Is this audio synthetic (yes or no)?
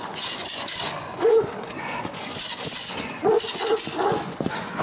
yes